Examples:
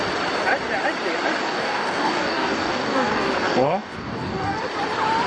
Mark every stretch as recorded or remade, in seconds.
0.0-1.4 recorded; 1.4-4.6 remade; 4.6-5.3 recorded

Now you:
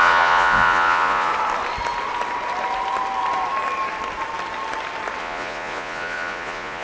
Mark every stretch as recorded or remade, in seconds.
0.0-1.3 remade; 1.3-5.2 recorded; 5.2-6.8 remade